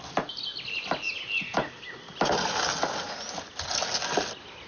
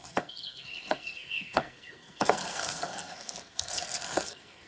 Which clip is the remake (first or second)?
second